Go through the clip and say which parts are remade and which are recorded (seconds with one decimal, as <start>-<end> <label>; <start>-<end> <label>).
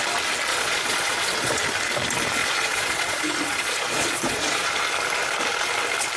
0.0-0.5 recorded; 0.5-1.6 remade; 1.6-2.4 recorded; 2.4-4.8 remade; 4.8-6.2 recorded